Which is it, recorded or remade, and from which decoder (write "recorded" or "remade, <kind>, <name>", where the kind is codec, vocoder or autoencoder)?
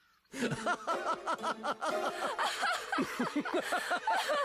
recorded